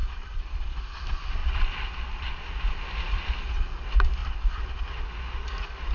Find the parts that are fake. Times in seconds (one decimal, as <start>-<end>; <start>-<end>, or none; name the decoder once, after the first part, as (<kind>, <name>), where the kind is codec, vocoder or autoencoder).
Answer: 0.0-0.7 (vocoder, BigVGAN v2); 1.4-3.3; 4.2-4.9